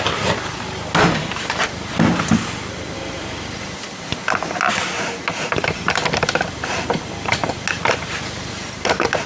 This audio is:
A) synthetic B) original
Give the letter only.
B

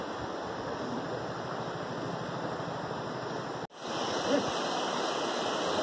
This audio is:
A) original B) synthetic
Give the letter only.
A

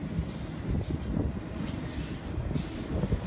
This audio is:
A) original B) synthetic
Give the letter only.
A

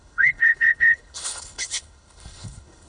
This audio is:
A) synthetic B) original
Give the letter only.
A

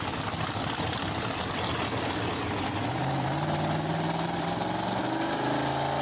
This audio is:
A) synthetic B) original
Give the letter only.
B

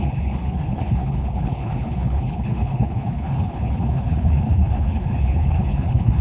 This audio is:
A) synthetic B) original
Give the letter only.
A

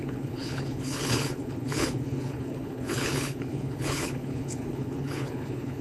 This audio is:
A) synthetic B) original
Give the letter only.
A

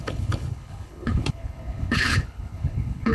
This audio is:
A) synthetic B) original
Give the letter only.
A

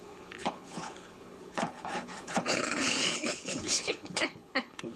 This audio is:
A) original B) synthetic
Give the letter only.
B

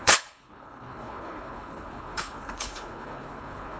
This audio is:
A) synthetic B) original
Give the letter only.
A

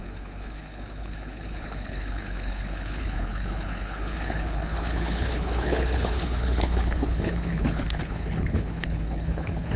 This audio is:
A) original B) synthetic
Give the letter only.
B